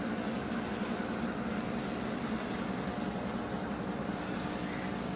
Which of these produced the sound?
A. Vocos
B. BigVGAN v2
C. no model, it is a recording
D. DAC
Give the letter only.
C